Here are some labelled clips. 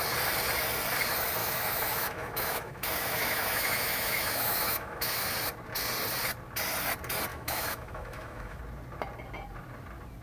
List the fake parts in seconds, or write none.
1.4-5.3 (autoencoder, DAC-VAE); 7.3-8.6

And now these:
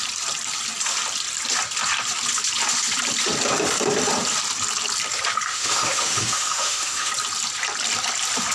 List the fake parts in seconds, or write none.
5.5-7.1 (autoencoder, DAC-VAE)

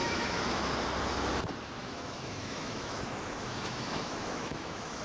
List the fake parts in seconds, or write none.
0.0-0.7 (autoencoder, DAC-VAE); 1.8-5.0